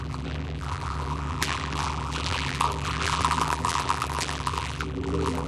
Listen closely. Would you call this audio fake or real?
fake